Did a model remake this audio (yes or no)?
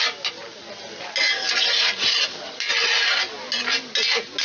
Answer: no